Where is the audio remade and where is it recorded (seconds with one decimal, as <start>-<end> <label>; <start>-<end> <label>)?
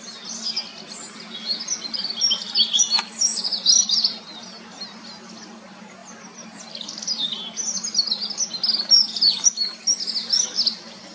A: 0.0-11.1 recorded